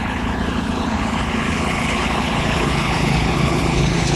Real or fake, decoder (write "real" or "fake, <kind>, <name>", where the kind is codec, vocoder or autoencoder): fake, codec, HILCodec